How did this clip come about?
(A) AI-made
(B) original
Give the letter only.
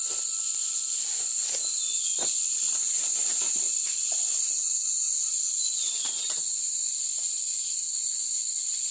B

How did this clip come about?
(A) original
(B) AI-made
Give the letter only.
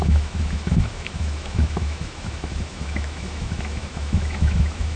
B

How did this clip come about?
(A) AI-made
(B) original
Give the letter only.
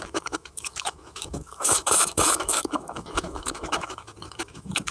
A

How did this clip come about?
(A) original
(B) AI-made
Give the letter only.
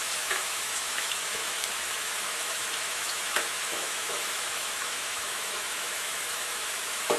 B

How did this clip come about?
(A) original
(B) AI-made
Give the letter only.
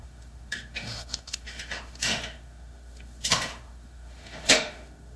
B